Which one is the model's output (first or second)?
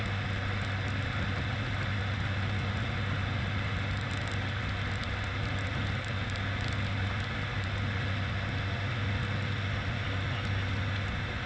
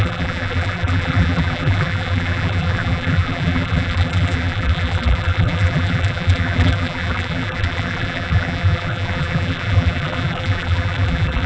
second